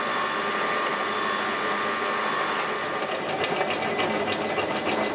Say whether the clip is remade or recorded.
recorded